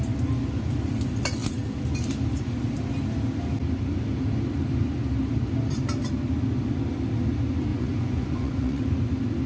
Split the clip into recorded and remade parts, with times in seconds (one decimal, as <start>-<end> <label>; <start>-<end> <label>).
0.0-7.7 recorded; 7.7-8.8 remade; 8.8-9.5 recorded